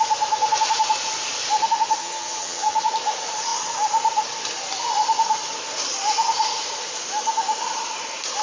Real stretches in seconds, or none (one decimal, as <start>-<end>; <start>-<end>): 0.0-2.0; 2.9-8.4